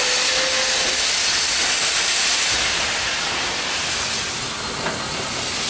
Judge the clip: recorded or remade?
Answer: recorded